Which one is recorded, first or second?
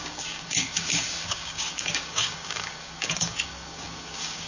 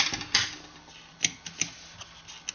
second